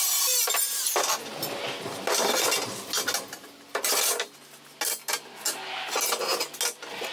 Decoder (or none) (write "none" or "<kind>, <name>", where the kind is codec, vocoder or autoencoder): none